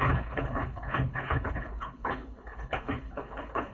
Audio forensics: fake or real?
fake